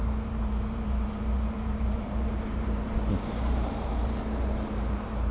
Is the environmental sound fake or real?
fake